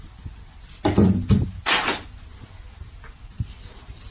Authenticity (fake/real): real